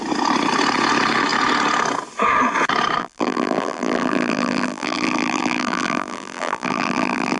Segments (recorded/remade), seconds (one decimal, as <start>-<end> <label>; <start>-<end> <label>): 0.0-3.0 recorded; 3.0-7.4 remade